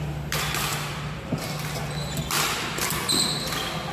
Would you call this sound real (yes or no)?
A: yes